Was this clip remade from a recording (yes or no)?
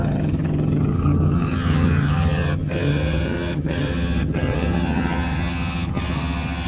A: yes